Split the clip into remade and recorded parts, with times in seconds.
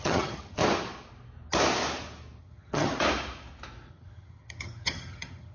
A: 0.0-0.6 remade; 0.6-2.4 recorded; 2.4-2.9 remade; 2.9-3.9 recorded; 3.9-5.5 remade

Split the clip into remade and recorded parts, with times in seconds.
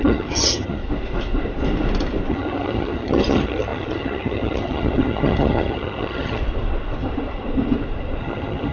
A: 0.0-0.8 remade; 0.8-2.3 recorded; 2.3-6.4 remade; 6.4-8.2 recorded; 8.2-8.7 remade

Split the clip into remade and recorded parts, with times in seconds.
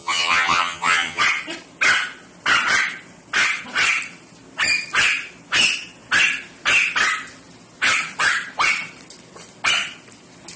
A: 0.0-1.2 remade; 1.2-10.6 recorded